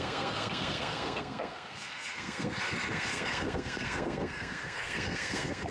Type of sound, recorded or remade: remade